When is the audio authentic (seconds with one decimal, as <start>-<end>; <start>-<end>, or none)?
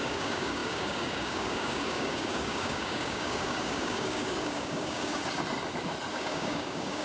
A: 5.2-6.1